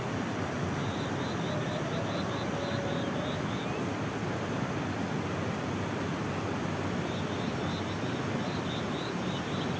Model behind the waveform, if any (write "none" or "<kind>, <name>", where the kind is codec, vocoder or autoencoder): none